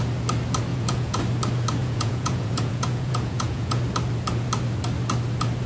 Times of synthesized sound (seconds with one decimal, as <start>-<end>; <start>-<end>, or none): 0.7-1.2; 1.8-3.8